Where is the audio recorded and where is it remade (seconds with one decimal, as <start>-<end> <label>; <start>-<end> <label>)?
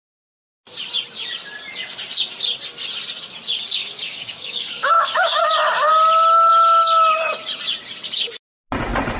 0.0-3.8 recorded; 3.8-5.4 remade; 5.4-9.2 recorded